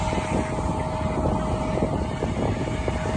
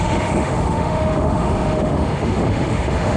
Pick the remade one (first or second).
second